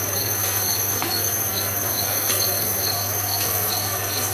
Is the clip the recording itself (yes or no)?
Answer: no